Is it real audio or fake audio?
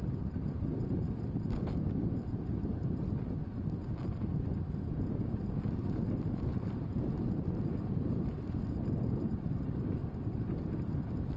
real